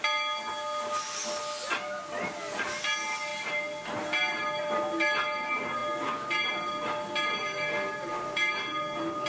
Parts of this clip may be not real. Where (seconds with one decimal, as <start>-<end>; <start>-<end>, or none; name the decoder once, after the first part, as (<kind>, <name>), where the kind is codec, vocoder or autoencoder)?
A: none